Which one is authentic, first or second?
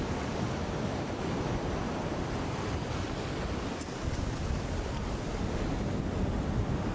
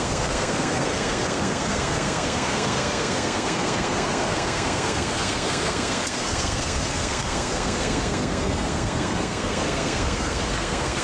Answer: first